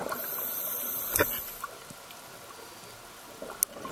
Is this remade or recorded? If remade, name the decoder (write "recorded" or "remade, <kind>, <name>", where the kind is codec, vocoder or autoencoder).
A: recorded